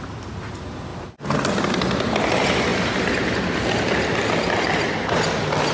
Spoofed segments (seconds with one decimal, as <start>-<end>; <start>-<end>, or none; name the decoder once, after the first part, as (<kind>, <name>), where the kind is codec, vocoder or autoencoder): none